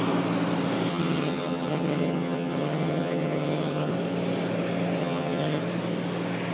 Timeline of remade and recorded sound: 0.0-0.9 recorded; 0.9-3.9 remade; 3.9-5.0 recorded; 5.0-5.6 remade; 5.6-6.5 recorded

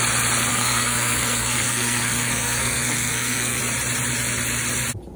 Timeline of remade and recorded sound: 0.0-0.5 recorded; 0.5-3.6 remade; 3.6-5.2 recorded

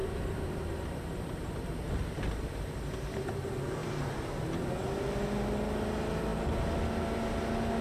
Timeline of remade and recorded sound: 0.0-7.8 recorded

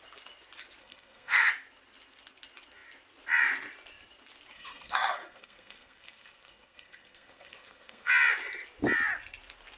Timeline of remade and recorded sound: 0.0-0.8 recorded; 0.8-1.5 remade; 1.5-4.5 recorded; 4.5-8.1 remade; 8.1-9.8 recorded